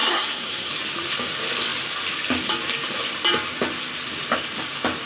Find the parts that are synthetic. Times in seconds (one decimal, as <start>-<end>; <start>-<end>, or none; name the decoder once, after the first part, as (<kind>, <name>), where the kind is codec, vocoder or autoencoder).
0.0-0.7 (codec, SNAC)